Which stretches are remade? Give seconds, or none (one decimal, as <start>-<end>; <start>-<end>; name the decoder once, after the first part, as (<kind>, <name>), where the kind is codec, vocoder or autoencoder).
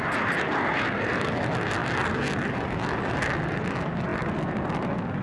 4.1-5.2 (vocoder, BigVGAN v2)